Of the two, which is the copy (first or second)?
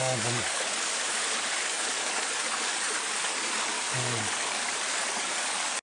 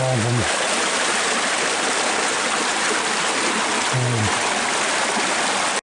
first